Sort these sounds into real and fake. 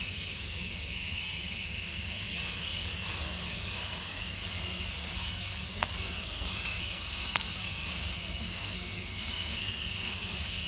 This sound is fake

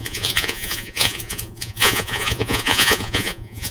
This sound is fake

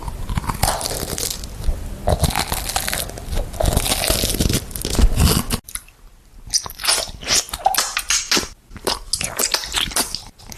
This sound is real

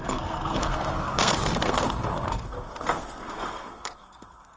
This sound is fake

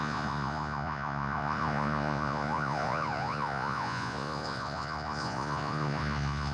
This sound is fake